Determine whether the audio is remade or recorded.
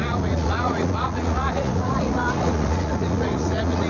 remade